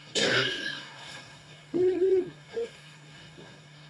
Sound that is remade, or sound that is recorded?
remade